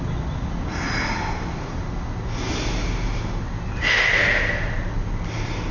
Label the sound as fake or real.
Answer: real